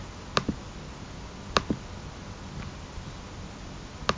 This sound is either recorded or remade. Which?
recorded